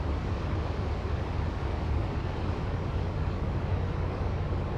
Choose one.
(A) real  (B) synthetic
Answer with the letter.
B